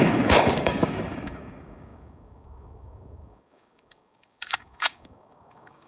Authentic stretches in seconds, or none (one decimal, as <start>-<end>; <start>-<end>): none